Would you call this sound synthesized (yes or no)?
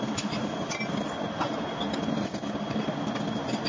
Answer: no